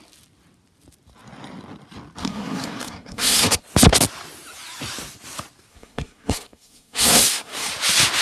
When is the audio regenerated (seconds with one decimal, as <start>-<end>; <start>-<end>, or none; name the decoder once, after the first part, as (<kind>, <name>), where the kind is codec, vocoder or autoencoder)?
2.2-3.6 (codec, SNAC); 5.7-7.7